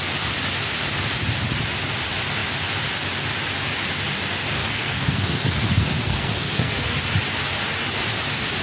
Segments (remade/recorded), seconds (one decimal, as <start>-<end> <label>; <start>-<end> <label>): 0.0-4.6 recorded; 4.6-6.9 remade; 6.9-8.6 recorded

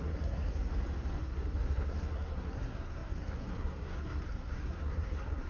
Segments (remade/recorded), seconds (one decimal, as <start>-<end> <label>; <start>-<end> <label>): 0.0-0.7 remade; 0.7-1.2 recorded; 1.2-5.5 remade

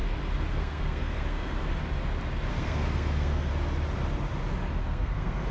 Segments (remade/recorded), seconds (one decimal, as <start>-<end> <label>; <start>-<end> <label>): 0.0-0.5 recorded; 0.5-1.8 remade; 1.8-2.5 recorded; 2.5-3.5 remade; 3.5-4.8 recorded; 4.8-5.5 remade

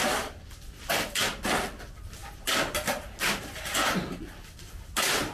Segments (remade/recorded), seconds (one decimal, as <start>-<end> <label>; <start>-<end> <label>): 0.0-5.3 recorded

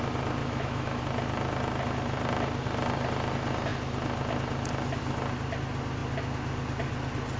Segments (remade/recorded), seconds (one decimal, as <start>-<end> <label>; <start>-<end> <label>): 0.0-0.4 recorded; 0.4-1.0 remade; 1.0-7.4 recorded